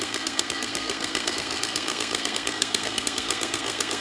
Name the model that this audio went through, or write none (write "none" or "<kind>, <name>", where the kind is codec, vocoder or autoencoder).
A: codec, SNAC